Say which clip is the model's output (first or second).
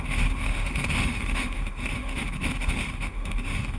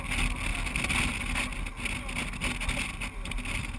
first